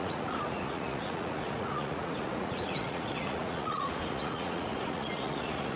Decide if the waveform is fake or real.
fake